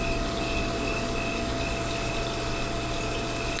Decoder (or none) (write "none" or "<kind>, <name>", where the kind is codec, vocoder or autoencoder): none